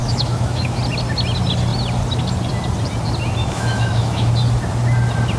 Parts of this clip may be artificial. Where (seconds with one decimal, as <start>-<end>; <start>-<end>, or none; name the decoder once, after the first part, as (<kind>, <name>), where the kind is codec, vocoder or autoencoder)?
0.0-0.8 (autoencoder, DAC-VAE); 3.4-4.3